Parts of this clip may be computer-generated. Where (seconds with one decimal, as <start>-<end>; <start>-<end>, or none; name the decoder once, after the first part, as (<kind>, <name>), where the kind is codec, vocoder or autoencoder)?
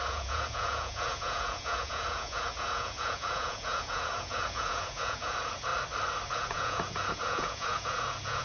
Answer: 0.0-5.7 (vocoder, Vocos); 6.3-8.4